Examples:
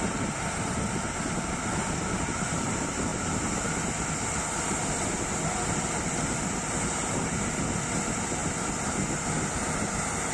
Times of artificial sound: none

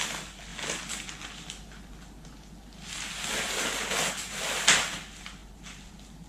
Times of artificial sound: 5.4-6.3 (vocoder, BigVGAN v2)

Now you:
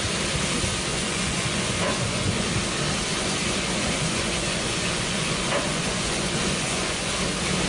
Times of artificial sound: 0.9-2.5 (vocoder, Vocos); 3.1-7.1

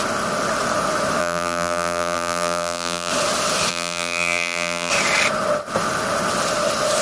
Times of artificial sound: 1.2-3.1 (vocoder, BigVGAN v2); 3.7-4.9